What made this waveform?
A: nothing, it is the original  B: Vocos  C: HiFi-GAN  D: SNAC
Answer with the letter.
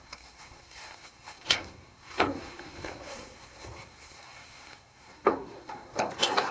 D